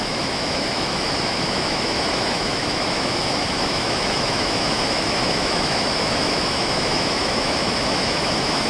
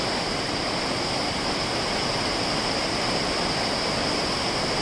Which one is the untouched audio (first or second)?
second